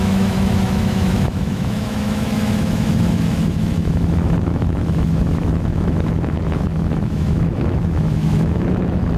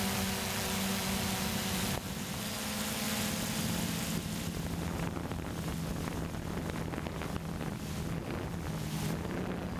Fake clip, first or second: first